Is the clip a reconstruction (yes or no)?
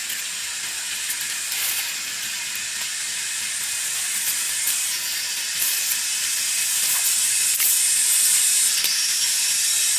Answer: no